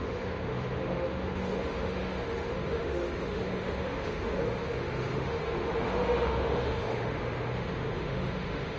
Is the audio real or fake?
fake